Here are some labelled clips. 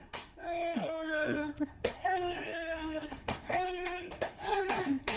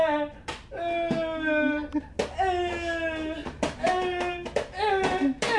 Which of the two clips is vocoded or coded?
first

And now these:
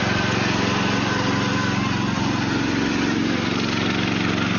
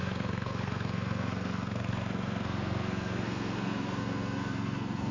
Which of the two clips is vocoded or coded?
second